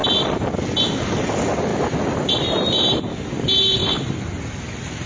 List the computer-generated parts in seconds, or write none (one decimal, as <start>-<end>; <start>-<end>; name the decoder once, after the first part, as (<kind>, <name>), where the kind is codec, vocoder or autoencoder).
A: 0.0-0.5 (vocoder, BigVGAN v2); 1.7-3.0; 3.8-4.4